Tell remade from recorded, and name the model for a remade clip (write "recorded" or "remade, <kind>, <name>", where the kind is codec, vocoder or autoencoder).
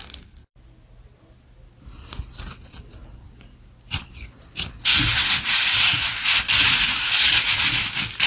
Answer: recorded